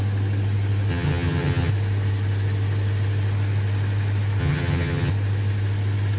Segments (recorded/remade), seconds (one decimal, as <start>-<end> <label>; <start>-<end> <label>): 0.0-0.9 recorded; 0.9-1.7 remade; 1.7-4.4 recorded; 4.4-5.1 remade; 5.1-6.2 recorded